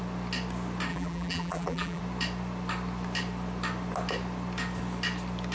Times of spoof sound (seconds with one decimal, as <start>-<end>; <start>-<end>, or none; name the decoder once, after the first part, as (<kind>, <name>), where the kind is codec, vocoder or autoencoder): 0.9-2.0 (vocoder, BigVGAN v2)